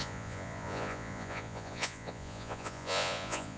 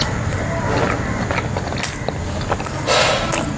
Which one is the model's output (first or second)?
first